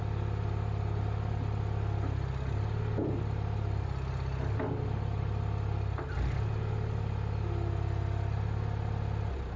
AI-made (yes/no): no